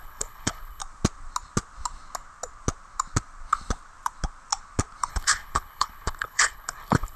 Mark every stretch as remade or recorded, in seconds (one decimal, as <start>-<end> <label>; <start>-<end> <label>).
0.0-0.8 remade; 0.8-5.1 recorded; 5.1-7.2 remade

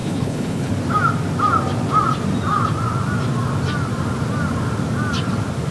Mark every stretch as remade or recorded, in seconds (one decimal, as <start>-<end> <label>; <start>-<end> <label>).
0.0-0.7 remade; 0.7-5.7 recorded

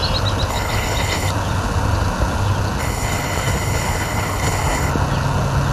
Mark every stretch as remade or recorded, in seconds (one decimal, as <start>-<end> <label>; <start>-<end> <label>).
0.0-0.5 recorded; 0.5-1.3 remade; 1.3-2.8 recorded; 2.8-4.9 remade; 4.9-5.7 recorded

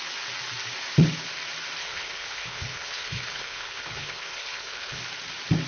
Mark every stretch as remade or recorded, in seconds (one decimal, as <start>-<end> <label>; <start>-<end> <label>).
0.0-1.8 recorded; 1.8-5.0 remade; 5.0-5.7 recorded

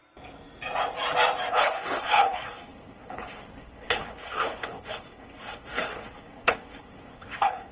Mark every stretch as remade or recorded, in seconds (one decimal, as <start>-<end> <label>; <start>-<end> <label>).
0.0-1.5 recorded; 1.5-7.7 remade

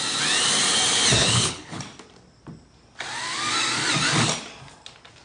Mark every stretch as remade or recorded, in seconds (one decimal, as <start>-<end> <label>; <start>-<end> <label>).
0.0-1.2 recorded; 1.2-1.8 remade; 1.8-5.2 recorded

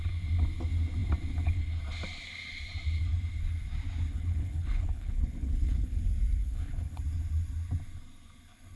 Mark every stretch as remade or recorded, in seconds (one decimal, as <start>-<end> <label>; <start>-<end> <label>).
0.0-4.1 recorded; 4.1-6.0 remade; 6.0-6.4 recorded; 6.4-7.0 remade; 7.0-8.8 recorded